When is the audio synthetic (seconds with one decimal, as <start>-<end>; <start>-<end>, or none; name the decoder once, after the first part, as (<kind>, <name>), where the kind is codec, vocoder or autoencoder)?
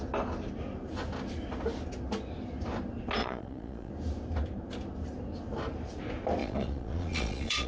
3.2-3.9 (vocoder, Vocos); 6.4-7.7